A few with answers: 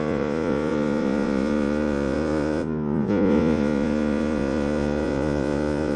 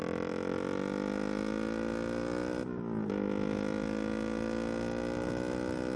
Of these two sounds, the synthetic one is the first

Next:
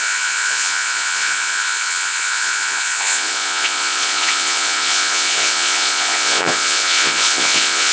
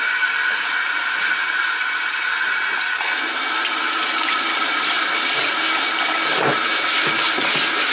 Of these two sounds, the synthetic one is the first